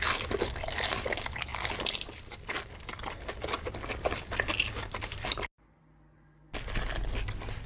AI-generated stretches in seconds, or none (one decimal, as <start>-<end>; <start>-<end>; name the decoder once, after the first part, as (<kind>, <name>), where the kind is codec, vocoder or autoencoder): none